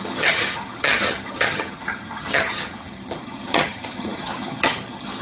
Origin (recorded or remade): remade